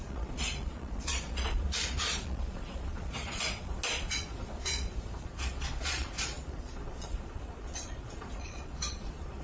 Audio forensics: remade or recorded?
remade